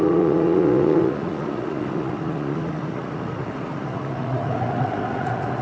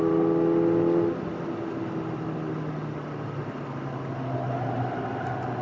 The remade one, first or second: first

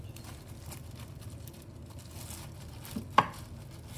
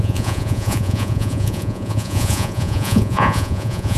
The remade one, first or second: second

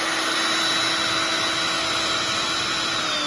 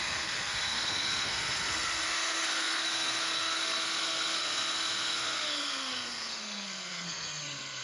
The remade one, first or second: second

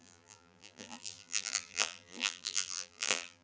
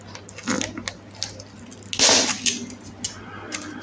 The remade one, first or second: first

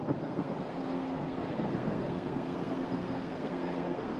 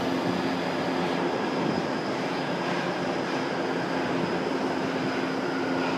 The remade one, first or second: first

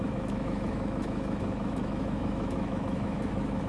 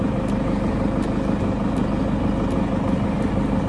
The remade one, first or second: first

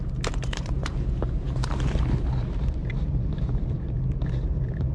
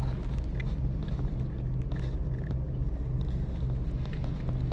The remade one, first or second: first